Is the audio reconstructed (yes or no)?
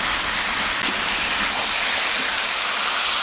no